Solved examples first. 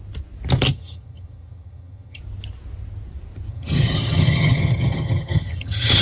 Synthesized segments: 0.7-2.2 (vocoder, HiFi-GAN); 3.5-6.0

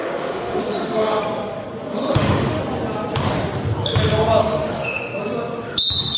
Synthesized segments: 0.0-1.2 (autoencoder, DAC-VAE); 1.9-2.6; 4.4-5.2

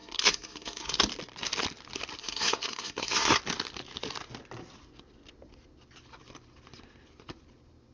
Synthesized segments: 0.0-1.0 (codec, SNAC); 2.2-3.4